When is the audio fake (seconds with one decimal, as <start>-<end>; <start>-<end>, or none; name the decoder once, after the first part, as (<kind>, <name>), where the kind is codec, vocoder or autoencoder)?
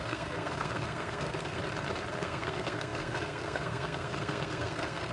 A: 0.0-1.6 (codec, SNAC); 2.1-5.1